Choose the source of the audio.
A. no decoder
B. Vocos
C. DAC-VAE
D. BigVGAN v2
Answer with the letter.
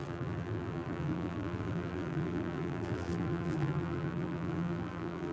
D